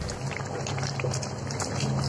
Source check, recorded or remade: recorded